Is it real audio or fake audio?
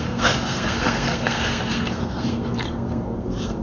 fake